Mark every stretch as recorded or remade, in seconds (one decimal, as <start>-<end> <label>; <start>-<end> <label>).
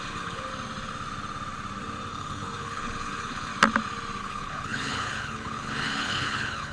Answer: 0.0-0.5 remade; 0.5-2.1 recorded; 2.1-3.5 remade; 3.5-4.2 recorded; 4.2-6.7 remade